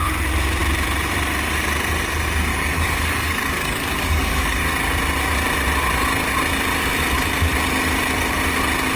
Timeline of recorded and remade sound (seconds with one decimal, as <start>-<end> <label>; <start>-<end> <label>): 0.0-2.5 recorded; 2.5-4.6 remade; 4.6-9.0 recorded